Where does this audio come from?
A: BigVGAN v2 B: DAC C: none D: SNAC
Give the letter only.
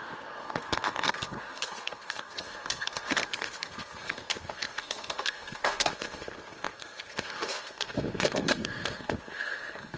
D